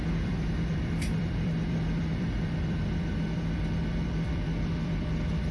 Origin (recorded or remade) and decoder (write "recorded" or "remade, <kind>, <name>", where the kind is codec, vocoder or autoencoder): remade, vocoder, BigVGAN v2